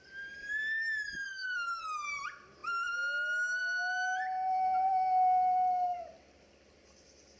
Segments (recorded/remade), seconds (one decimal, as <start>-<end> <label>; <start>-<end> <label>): 0.0-1.2 recorded; 1.2-1.8 remade; 1.8-7.4 recorded